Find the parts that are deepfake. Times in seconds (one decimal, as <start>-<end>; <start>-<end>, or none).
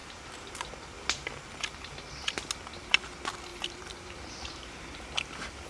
0.0-0.7; 3.5-5.0